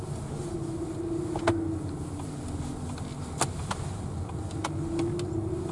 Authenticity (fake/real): real